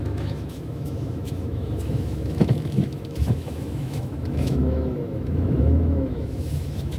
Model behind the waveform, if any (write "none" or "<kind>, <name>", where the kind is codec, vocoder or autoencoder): autoencoder, DAC-VAE